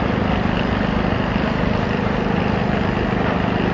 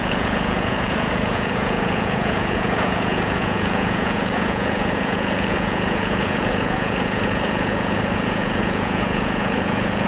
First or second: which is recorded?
first